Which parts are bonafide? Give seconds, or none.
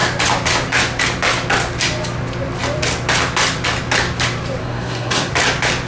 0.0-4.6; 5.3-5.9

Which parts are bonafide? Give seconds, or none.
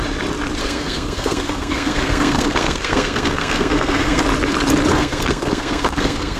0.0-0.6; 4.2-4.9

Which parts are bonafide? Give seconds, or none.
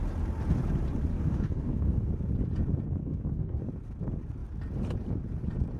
0.0-1.1; 2.1-3.0; 3.6-5.8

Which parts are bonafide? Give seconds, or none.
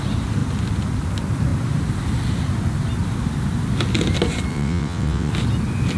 0.0-4.5; 5.3-6.0